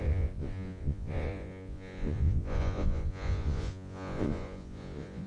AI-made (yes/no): yes